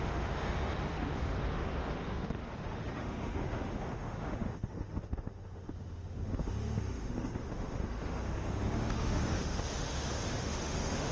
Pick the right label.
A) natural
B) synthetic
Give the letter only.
B